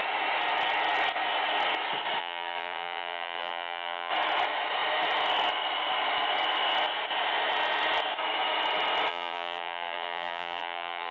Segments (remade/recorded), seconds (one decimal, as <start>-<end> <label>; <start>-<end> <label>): 0.0-2.2 recorded; 2.2-4.1 remade; 4.1-9.1 recorded; 9.1-11.1 remade